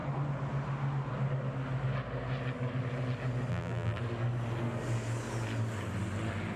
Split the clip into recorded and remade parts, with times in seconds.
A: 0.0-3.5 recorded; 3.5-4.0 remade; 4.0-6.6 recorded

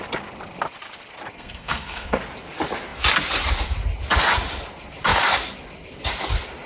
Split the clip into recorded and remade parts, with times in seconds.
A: 0.0-1.3 recorded; 1.3-2.2 remade; 2.2-6.7 recorded

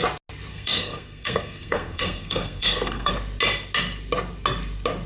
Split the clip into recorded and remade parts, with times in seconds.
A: 0.0-0.5 recorded; 0.5-3.1 remade; 3.1-5.1 recorded